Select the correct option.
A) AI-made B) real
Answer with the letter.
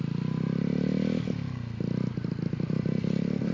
B